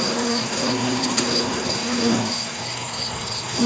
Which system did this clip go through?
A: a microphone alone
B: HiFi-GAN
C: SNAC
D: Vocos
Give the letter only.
C